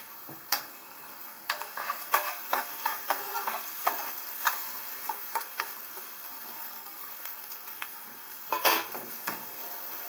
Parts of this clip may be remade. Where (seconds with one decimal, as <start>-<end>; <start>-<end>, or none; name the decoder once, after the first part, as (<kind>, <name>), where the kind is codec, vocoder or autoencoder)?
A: 0.0-10.1 (codec, SNAC)